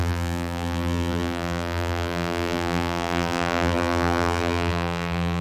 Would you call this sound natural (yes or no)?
no